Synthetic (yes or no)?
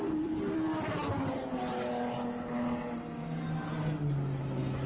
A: no